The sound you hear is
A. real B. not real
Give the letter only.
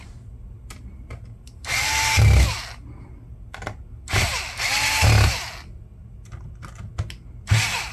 A